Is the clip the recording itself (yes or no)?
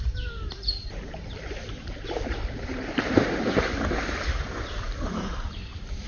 no